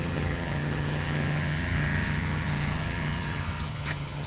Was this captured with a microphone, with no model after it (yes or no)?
no